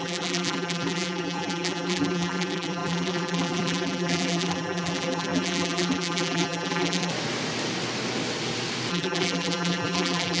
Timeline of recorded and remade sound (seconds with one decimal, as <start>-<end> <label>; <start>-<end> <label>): 0.0-7.1 remade; 7.1-8.9 recorded; 8.9-10.4 remade